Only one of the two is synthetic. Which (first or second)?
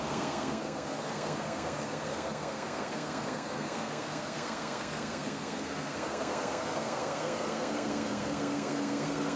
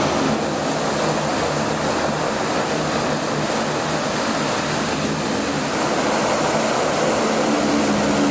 first